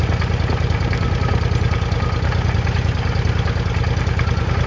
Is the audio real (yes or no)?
yes